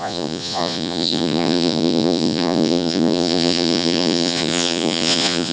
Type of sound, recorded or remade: remade